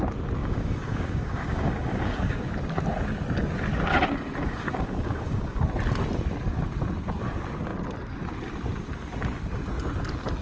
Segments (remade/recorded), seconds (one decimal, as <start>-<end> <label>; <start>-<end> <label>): 0.0-0.4 recorded; 0.4-2.5 remade; 2.5-4.4 recorded; 4.4-5.6 remade; 5.6-10.4 recorded